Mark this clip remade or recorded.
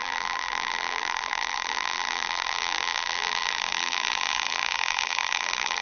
remade